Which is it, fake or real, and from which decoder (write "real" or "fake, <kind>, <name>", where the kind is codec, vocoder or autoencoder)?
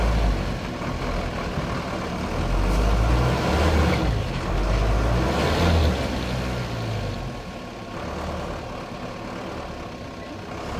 real